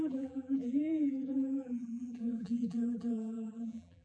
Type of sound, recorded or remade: remade